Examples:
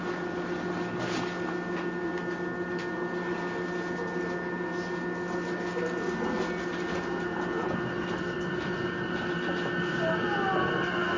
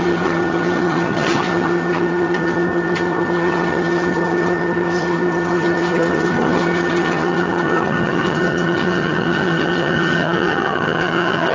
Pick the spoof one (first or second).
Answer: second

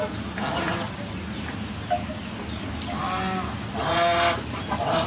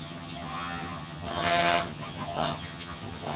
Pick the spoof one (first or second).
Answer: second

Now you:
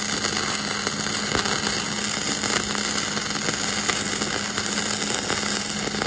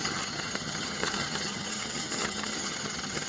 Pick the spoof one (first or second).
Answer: second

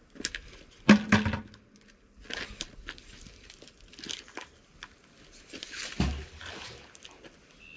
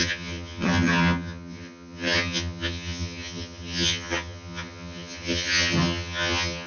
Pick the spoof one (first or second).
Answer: second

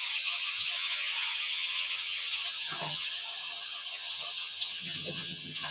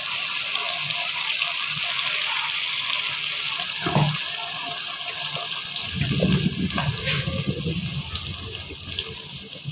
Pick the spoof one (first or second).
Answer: first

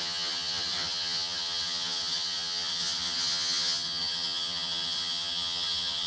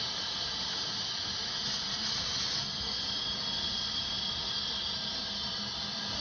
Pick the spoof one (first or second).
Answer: first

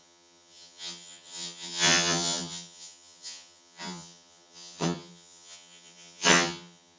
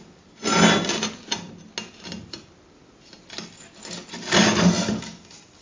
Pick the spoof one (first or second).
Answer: first